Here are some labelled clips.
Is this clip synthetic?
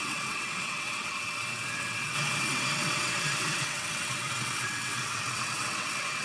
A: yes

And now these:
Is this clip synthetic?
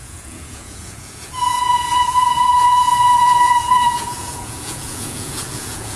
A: yes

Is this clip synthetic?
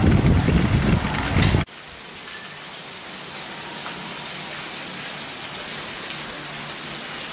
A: no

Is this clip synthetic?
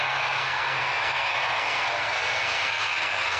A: yes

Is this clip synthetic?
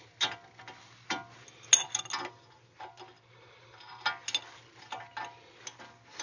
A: no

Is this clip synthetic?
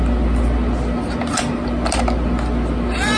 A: no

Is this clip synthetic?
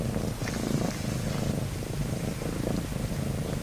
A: no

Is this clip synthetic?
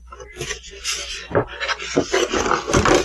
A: no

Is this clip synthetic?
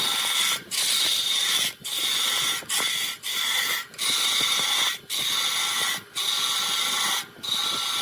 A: no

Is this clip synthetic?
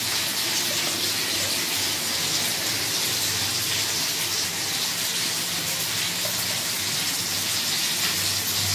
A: no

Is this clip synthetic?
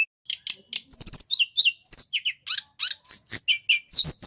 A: no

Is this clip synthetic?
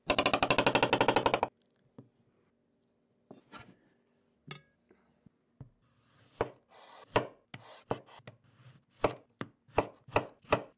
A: no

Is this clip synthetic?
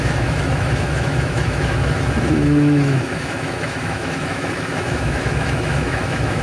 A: yes